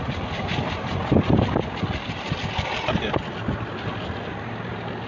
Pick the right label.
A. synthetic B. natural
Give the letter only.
B